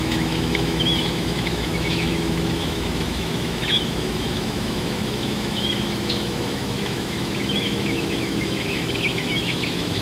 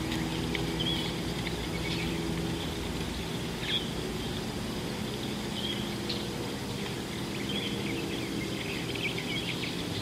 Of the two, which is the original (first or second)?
second